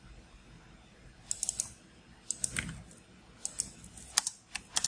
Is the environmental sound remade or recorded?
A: recorded